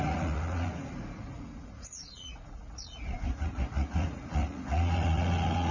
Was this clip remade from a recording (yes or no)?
yes